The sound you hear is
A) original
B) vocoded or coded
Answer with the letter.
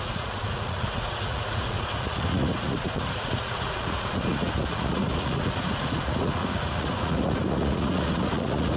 B